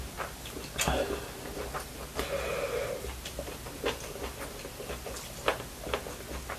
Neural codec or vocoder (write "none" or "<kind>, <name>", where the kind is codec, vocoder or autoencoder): none